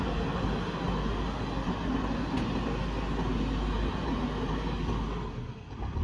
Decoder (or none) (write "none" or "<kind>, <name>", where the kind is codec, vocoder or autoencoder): none